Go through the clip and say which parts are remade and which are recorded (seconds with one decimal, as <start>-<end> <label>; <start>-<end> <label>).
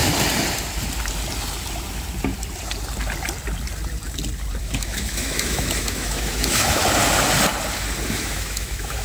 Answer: 0.0-4.6 recorded; 4.6-6.8 remade; 6.8-8.1 recorded; 8.1-9.0 remade